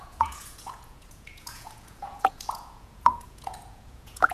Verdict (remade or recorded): remade